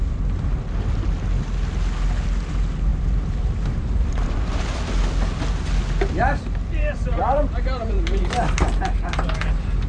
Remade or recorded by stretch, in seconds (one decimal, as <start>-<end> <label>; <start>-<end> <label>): 0.0-2.9 recorded; 2.9-4.8 remade; 4.8-6.8 recorded; 6.8-8.6 remade; 8.6-9.9 recorded